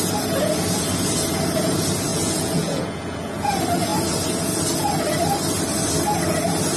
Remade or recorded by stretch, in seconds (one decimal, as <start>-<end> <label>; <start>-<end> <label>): 0.0-2.1 recorded; 2.1-3.5 remade; 3.5-6.8 recorded